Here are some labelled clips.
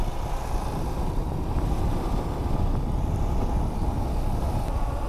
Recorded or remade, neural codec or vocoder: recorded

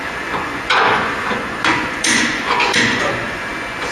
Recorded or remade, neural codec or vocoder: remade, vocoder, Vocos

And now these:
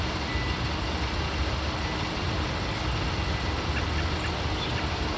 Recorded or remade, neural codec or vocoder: recorded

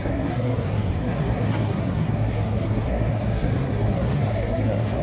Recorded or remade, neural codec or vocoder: remade, codec, SNAC